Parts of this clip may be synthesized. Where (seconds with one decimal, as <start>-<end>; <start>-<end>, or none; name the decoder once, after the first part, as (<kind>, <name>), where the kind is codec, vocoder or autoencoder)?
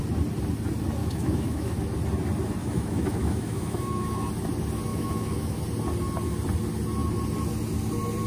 1.0-1.8 (autoencoder, DAC-VAE); 2.6-4.3; 4.9-5.6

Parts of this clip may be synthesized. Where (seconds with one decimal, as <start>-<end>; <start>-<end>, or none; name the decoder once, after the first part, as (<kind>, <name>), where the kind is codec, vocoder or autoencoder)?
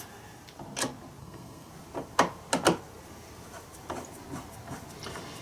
1.2-1.7 (codec, SNAC)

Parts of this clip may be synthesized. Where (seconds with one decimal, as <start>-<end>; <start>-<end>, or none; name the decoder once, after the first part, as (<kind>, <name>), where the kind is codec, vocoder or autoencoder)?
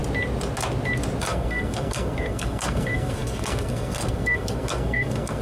1.2-5.4 (codec, SNAC)